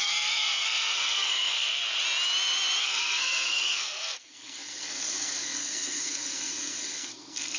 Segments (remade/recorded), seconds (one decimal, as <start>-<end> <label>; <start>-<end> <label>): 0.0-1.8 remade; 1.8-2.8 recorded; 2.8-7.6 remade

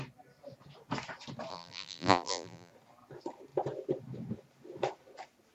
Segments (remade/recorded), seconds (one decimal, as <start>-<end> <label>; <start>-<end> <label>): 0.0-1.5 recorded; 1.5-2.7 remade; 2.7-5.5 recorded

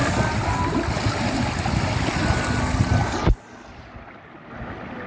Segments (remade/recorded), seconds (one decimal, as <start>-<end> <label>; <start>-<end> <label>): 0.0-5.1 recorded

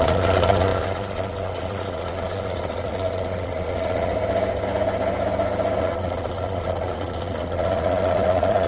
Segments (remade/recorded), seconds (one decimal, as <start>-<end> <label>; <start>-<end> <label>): 0.0-4.1 remade; 4.1-5.8 recorded; 5.8-8.7 remade